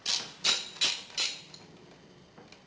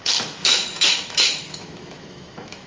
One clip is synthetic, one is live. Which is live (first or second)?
first